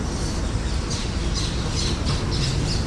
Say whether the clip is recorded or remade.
recorded